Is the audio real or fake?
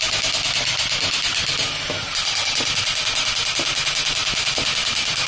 real